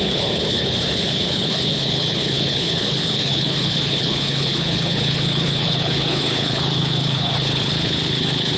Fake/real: fake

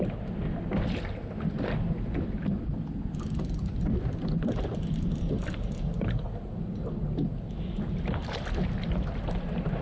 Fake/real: real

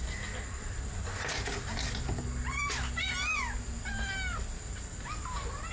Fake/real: real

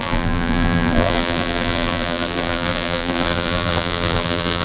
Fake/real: fake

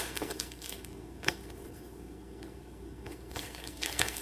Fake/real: fake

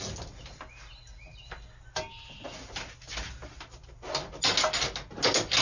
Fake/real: real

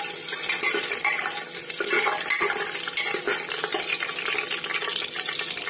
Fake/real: real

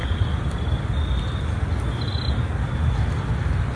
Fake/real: real